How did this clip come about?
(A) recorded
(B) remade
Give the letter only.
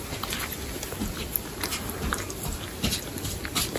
A